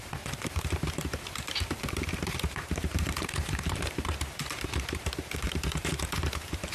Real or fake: fake